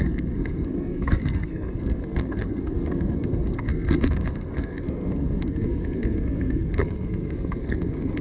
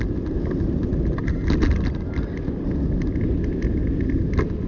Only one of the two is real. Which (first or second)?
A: second